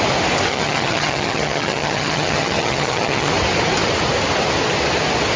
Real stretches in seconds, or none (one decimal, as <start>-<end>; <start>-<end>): 0.0-0.5; 3.3-5.4